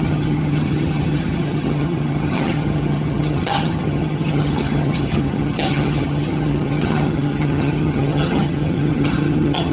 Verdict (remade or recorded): remade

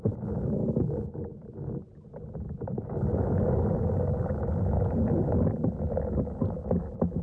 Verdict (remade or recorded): recorded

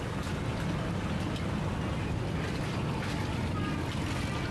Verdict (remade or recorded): recorded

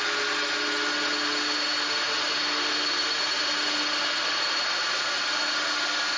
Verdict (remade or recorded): recorded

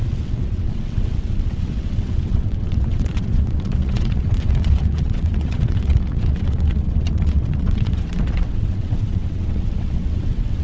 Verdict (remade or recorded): remade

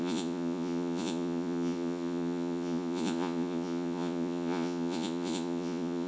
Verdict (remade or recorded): remade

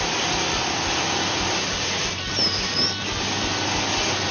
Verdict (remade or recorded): recorded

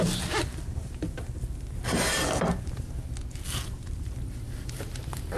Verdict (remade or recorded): recorded